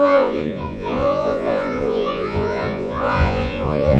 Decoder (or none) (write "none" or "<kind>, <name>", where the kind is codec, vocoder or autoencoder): vocoder, Vocos